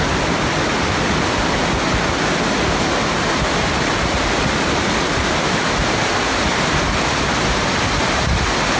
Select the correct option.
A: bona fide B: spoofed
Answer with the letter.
A